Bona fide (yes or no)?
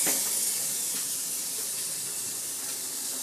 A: yes